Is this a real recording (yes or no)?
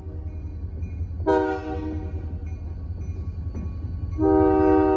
yes